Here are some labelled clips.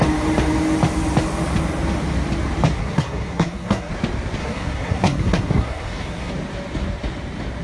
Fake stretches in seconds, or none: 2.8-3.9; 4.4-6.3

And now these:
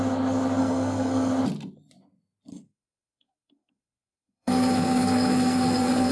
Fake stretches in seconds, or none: 0.6-1.3; 2.5-6.1

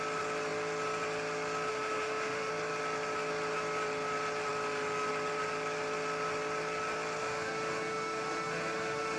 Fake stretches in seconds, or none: 1.7-2.5; 7.2-9.2

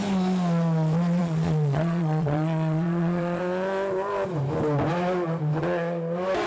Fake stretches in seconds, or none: 1.2-3.4